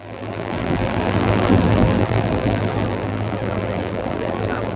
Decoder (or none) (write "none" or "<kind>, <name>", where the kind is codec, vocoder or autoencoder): vocoder, BigVGAN v2